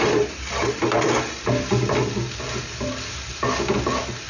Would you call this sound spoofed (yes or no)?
no